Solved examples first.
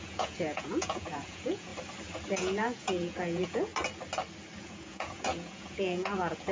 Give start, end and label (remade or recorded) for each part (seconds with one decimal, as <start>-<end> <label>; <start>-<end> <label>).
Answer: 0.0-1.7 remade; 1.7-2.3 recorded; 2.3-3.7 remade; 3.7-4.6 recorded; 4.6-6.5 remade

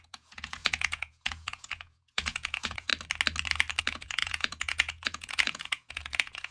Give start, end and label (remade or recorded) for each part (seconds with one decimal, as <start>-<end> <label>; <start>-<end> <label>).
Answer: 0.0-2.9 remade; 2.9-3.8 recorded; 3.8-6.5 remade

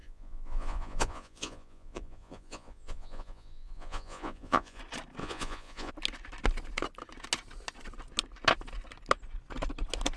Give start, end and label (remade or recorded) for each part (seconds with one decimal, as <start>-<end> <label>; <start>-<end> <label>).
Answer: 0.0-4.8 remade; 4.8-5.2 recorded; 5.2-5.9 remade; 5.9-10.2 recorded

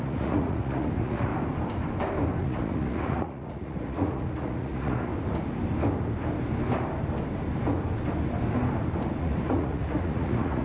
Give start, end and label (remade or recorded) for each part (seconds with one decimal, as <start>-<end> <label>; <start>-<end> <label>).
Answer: 0.0-1.3 remade; 1.3-2.4 recorded; 2.4-5.1 remade; 5.1-9.2 recorded; 9.2-10.6 remade

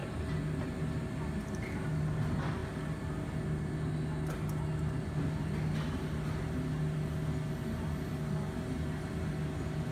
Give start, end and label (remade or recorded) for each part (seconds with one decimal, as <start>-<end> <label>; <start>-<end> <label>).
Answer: 0.0-9.9 recorded

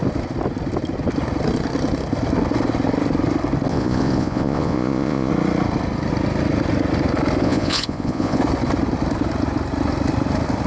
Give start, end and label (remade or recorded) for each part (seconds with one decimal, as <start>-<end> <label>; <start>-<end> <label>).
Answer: 0.0-3.7 recorded; 3.7-5.3 remade; 5.3-7.4 recorded; 7.4-8.4 remade; 8.4-10.7 recorded

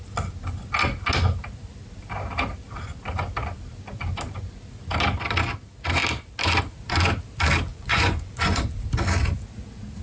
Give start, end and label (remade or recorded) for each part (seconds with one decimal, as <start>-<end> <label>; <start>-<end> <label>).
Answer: 0.0-7.7 recorded; 7.7-8.6 remade; 8.6-10.0 recorded